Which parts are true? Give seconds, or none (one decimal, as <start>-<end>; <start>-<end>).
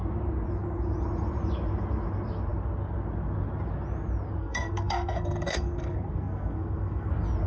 0.0-4.4; 7.1-7.5